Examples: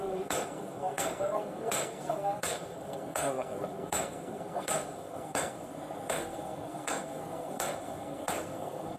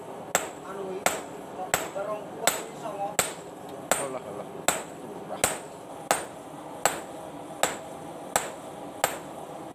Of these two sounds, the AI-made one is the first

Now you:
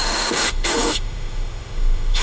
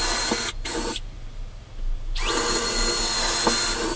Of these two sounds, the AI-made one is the first